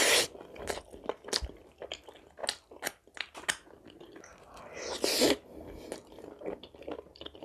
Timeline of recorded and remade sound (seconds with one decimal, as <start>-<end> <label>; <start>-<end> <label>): 0.0-7.4 recorded